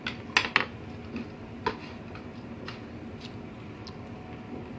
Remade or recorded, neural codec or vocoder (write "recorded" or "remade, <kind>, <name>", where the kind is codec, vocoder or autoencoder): recorded